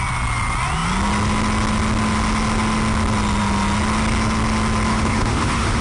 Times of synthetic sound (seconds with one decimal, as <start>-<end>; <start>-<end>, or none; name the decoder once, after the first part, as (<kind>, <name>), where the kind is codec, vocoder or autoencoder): 4.9-5.8 (autoencoder, DAC-VAE)